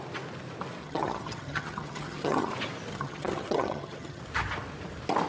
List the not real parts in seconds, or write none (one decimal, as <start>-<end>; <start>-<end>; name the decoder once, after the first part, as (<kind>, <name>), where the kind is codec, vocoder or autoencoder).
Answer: 0.8-2.5 (vocoder, HiFi-GAN); 2.9-4.2